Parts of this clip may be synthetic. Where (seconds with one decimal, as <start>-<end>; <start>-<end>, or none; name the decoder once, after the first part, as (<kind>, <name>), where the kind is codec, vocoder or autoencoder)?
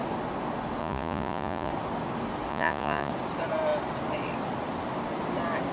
0.8-1.7 (vocoder, Vocos); 2.5-3.1